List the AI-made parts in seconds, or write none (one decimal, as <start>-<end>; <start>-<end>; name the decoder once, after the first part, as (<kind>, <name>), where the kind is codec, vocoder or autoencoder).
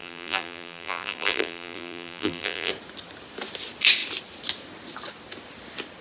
0.0-2.7 (vocoder, BigVGAN v2)